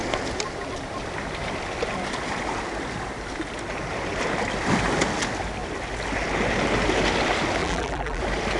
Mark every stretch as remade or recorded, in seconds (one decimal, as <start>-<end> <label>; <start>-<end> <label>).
0.0-7.6 recorded; 7.6-8.2 remade; 8.2-8.6 recorded